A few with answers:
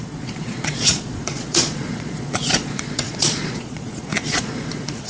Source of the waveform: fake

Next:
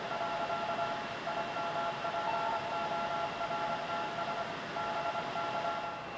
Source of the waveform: real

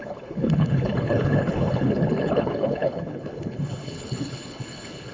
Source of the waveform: fake